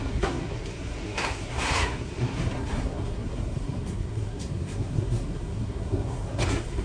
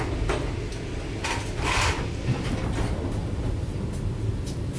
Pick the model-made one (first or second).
first